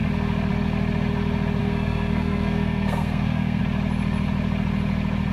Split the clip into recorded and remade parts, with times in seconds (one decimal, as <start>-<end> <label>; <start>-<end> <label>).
0.0-1.6 recorded; 1.6-3.6 remade; 3.6-5.3 recorded